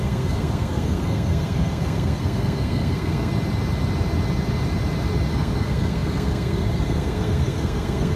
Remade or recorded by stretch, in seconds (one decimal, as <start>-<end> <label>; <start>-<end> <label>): 0.0-3.3 remade; 3.3-5.3 recorded; 5.3-8.2 remade